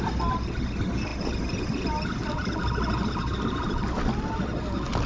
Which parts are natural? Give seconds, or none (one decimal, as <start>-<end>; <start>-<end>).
0.0-5.1